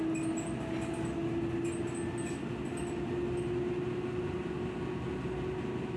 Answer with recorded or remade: recorded